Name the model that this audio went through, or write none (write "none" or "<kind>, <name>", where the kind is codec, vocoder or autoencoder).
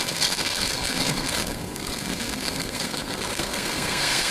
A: codec, SNAC